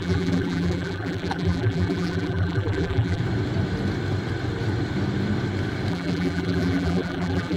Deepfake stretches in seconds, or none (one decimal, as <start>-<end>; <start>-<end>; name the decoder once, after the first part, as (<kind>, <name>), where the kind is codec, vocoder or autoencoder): 0.0-3.2 (vocoder, BigVGAN v2); 5.9-7.6